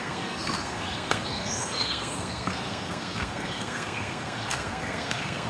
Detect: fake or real fake